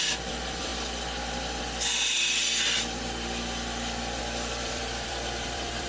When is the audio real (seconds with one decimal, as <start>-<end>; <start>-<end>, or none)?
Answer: 0.7-1.6; 2.4-4.2